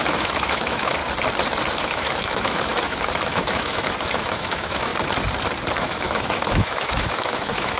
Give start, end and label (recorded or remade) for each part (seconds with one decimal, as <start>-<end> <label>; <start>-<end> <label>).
0.0-1.0 remade; 1.0-1.8 recorded; 1.8-4.9 remade; 4.9-5.8 recorded; 5.8-7.8 remade